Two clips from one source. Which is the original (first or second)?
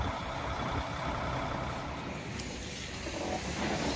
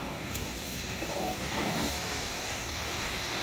first